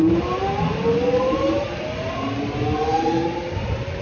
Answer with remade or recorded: recorded